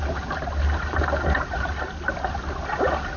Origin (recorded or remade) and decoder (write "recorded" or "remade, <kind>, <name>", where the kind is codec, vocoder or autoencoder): recorded